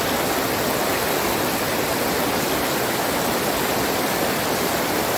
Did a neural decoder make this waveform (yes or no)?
no